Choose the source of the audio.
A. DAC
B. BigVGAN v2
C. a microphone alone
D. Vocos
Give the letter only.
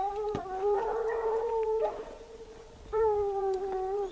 D